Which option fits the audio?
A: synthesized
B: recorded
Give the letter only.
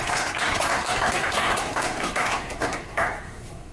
A